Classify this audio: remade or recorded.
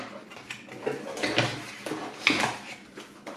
remade